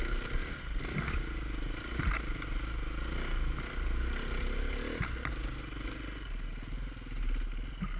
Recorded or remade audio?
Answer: recorded